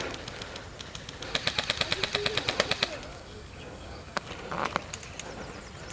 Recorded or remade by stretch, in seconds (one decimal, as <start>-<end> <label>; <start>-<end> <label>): 0.0-3.1 recorded; 3.1-4.3 remade; 4.3-5.9 recorded

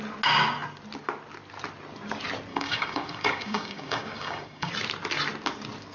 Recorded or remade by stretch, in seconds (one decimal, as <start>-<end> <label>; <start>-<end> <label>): 0.0-2.5 recorded; 2.5-4.7 remade; 4.7-5.9 recorded

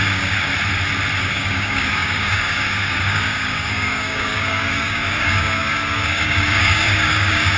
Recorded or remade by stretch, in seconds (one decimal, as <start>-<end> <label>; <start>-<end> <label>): 0.0-0.5 remade; 0.5-1.2 recorded; 1.2-7.6 remade

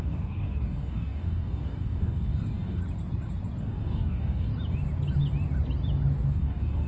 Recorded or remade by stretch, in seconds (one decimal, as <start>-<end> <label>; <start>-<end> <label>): 0.0-2.8 remade; 2.8-3.6 recorded; 3.6-4.5 remade; 4.5-6.3 recorded; 6.3-6.9 remade

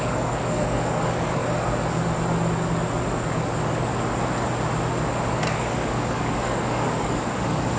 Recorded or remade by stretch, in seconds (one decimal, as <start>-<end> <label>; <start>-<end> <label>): 0.0-1.4 remade; 1.4-3.3 recorded; 3.3-3.9 remade; 3.9-5.3 recorded; 5.3-7.8 remade

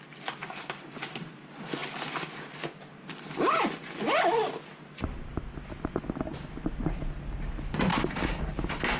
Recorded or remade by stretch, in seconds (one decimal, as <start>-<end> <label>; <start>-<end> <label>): 0.0-7.9 recorded; 7.9-8.4 remade; 8.4-9.0 recorded